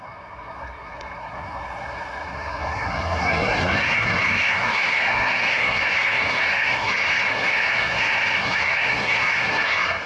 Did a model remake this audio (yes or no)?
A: yes